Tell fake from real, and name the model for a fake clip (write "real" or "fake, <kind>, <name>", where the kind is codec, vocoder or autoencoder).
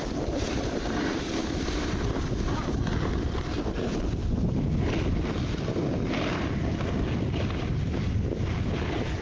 real